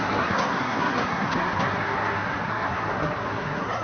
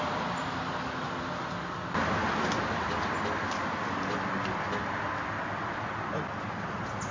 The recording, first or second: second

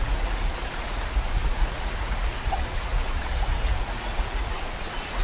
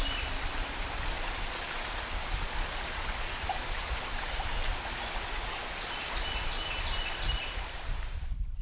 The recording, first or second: second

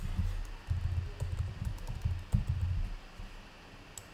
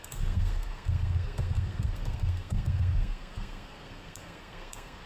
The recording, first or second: first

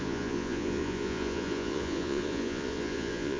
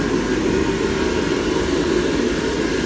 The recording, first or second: second